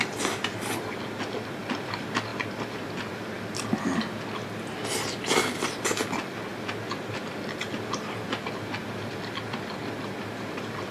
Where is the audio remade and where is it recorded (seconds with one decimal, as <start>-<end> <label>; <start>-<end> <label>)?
0.0-10.9 recorded